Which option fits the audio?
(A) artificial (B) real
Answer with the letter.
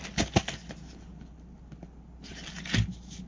B